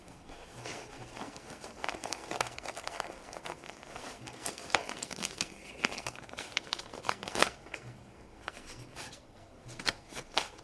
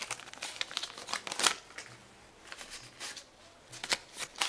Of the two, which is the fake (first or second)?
first